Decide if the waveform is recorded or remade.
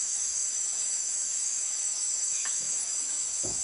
remade